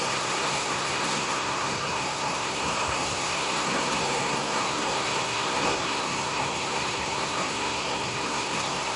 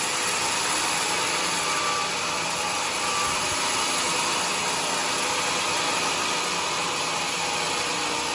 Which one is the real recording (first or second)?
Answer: second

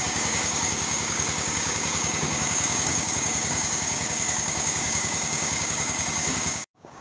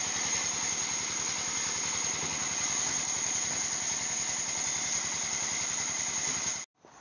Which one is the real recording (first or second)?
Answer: second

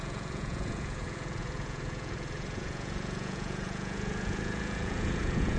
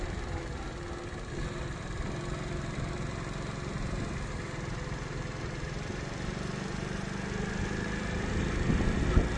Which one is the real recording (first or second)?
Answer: second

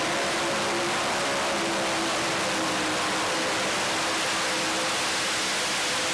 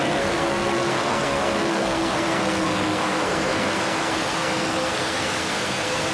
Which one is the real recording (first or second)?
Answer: first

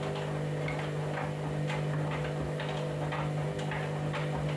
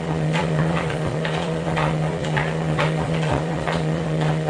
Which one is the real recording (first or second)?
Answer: first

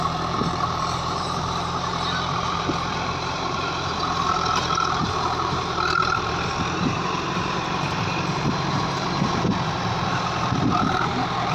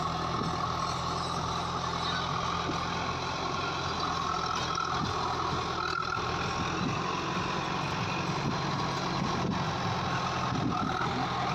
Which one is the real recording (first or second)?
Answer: second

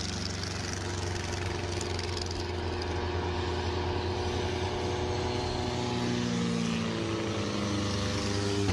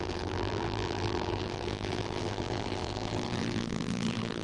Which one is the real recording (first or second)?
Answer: first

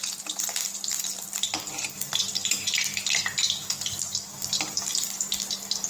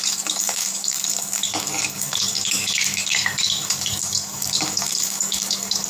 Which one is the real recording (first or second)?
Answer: first